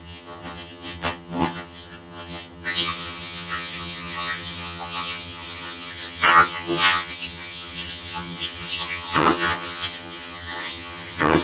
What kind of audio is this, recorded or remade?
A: remade